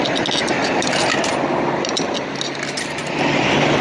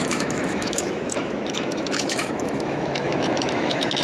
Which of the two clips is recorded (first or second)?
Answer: first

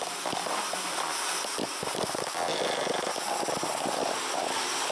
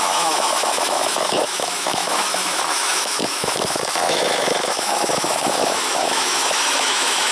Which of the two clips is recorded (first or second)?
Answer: first